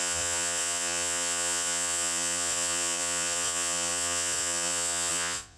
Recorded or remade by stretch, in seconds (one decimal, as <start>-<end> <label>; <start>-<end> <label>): 0.0-5.6 remade